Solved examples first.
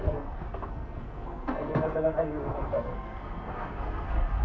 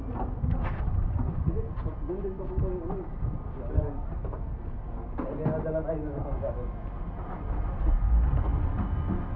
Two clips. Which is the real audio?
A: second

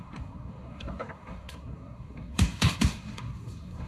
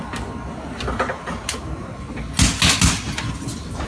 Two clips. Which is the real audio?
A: second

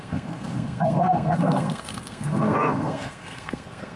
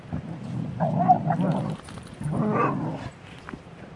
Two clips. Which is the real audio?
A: second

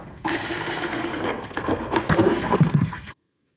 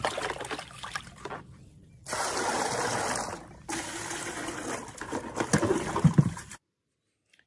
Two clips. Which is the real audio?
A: second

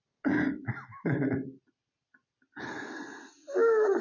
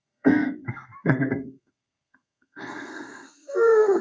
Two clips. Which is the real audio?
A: first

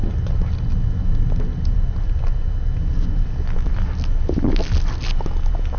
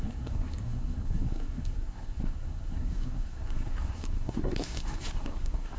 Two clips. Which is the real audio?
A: first